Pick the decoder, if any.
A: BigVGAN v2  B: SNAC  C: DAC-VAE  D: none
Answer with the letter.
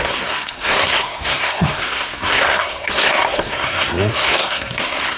B